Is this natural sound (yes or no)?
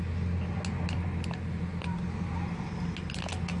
yes